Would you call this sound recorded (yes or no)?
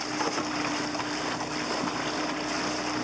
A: yes